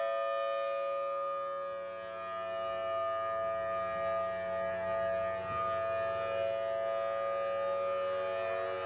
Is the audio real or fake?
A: real